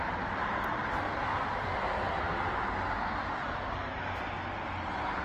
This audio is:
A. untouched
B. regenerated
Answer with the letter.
A